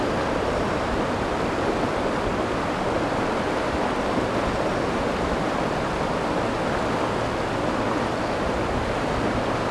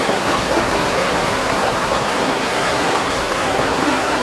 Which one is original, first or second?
first